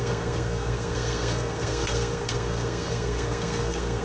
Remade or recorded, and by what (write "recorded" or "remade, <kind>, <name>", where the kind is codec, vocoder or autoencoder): remade, codec, SNAC